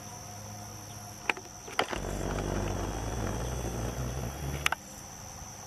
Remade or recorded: recorded